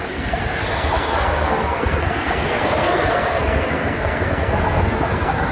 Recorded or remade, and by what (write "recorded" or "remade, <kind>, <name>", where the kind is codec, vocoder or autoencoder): remade, codec, SNAC